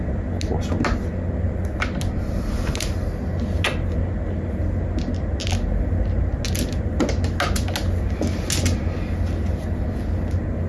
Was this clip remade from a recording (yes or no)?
no